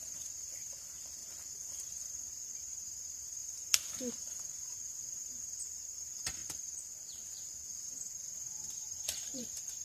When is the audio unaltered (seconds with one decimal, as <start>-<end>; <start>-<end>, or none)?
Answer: 6.4-7.6